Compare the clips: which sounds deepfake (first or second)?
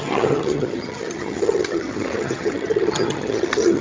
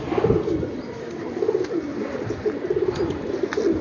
first